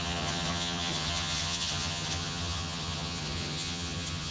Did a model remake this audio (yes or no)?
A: yes